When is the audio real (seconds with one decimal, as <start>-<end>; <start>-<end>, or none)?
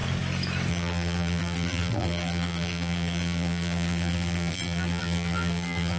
0.0-0.7